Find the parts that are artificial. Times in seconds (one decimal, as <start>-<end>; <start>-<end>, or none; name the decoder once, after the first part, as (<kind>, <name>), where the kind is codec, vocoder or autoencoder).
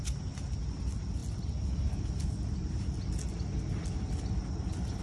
none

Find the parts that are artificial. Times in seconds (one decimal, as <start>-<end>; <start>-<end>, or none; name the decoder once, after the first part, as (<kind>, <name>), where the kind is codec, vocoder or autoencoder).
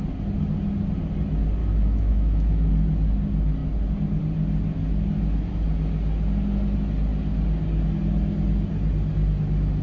1.6-2.7 (autoencoder, DAC-VAE)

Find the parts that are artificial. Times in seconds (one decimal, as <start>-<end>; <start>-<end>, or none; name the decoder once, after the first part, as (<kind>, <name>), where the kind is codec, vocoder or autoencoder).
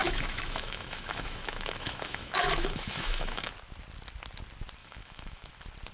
0.0-3.5 (autoencoder, DAC-VAE); 4.8-5.5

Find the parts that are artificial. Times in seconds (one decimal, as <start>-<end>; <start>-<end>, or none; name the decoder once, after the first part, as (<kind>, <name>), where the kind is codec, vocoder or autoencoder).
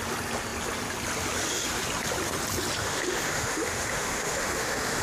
2.8-5.0 (autoencoder, DAC-VAE)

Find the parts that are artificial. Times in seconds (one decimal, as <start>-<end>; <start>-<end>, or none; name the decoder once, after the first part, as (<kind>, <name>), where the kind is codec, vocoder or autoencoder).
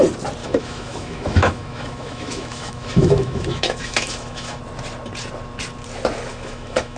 0.4-4.6 (autoencoder, DAC-VAE); 6.3-7.0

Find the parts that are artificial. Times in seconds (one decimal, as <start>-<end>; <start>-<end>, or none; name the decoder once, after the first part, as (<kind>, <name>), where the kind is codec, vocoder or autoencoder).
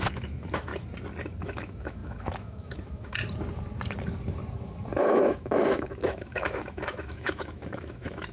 0.0-0.7 (autoencoder, DAC-VAE); 1.4-3.2; 5.0-8.3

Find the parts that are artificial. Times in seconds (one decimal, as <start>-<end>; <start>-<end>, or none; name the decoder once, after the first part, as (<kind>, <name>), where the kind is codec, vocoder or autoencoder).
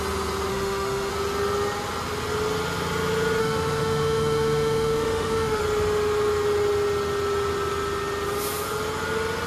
0.5-1.1 (autoencoder, DAC-VAE); 3.4-5.6